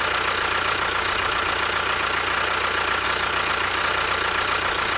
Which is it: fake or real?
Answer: real